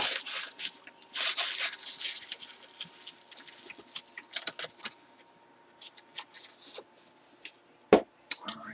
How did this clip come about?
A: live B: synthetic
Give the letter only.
A